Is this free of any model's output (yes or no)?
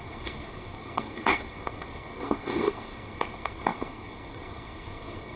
no